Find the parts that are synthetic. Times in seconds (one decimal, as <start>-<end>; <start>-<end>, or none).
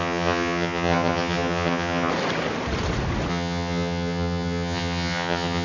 0.0-2.1; 3.3-5.6